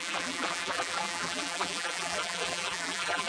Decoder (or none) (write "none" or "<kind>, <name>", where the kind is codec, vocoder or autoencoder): vocoder, BigVGAN v2